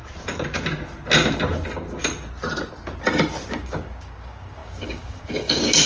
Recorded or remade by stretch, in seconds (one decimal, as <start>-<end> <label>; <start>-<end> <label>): 0.0-3.5 recorded; 3.5-5.9 remade